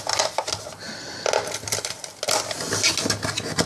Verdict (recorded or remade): recorded